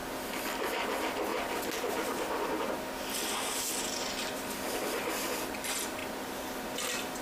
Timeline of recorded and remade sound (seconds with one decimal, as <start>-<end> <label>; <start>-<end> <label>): 0.0-0.9 recorded; 0.9-1.3 remade; 1.3-5.6 recorded; 5.6-6.0 remade; 6.0-7.2 recorded